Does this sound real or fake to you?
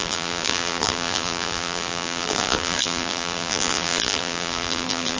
fake